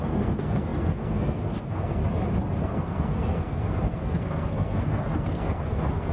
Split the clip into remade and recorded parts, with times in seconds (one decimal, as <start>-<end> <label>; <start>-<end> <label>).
0.0-2.0 remade; 2.0-2.6 recorded; 2.6-6.1 remade